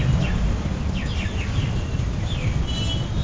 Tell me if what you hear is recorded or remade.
recorded